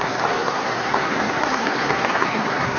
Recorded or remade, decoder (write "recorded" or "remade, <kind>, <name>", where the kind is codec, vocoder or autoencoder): remade, codec, SNAC